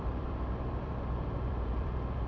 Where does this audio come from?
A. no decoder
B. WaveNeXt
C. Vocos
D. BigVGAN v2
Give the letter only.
D